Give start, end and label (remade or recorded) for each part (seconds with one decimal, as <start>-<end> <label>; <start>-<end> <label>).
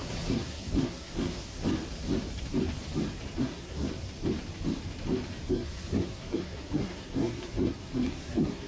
0.0-1.6 remade; 1.6-3.4 recorded; 3.4-3.9 remade; 3.9-5.5 recorded; 5.5-8.7 remade